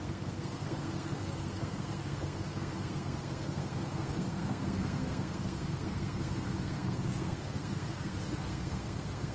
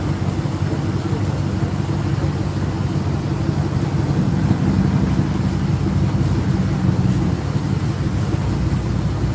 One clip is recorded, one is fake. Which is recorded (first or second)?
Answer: second